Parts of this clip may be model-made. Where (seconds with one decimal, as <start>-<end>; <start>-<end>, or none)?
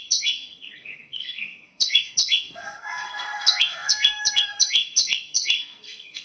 0.0-6.2